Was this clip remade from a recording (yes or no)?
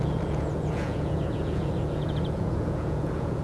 yes